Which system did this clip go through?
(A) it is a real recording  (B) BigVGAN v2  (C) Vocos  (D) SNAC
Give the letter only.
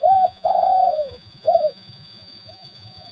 C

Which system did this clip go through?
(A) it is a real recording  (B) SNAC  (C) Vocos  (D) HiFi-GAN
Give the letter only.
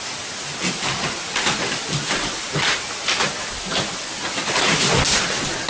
A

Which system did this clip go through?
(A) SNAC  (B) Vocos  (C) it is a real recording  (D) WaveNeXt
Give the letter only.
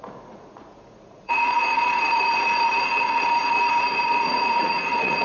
B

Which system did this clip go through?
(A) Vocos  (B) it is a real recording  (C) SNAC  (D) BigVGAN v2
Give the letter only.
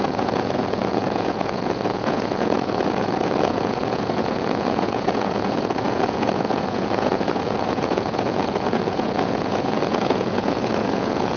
A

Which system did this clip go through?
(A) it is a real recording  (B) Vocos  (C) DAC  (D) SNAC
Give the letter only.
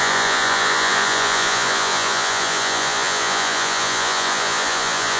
B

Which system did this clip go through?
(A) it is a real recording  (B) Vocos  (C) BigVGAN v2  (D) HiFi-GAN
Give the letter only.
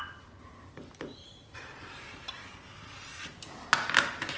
A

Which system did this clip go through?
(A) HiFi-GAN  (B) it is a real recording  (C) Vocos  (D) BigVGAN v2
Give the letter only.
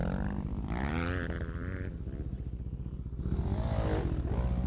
B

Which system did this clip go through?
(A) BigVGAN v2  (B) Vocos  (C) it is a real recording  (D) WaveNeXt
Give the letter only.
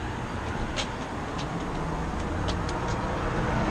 C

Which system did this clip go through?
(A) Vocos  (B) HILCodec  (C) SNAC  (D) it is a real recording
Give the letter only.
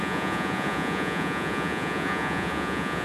A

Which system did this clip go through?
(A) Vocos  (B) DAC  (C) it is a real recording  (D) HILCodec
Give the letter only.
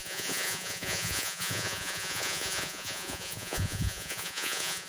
A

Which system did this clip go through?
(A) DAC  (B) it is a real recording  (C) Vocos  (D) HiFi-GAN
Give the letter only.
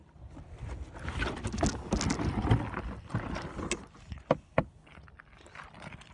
B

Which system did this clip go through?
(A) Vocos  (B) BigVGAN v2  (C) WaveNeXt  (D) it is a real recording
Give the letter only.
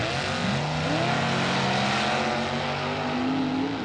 D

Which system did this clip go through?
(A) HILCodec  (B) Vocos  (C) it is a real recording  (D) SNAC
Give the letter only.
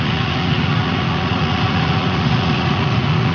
B